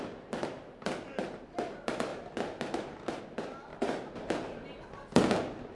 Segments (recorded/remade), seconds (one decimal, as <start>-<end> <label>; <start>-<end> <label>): 0.0-3.7 recorded; 3.7-4.9 remade; 4.9-5.7 recorded